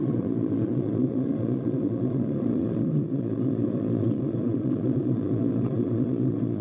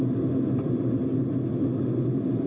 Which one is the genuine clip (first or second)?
second